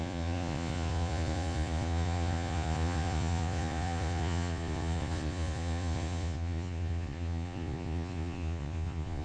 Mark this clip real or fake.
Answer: fake